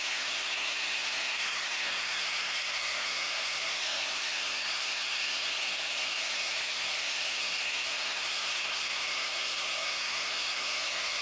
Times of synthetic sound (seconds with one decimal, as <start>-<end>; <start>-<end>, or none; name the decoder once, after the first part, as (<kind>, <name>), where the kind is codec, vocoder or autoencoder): 0.0-11.2 (codec, SNAC)